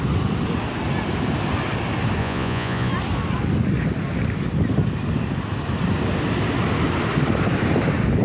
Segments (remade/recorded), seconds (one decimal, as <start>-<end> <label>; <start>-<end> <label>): 0.0-2.2 recorded; 2.2-2.9 remade; 2.9-8.2 recorded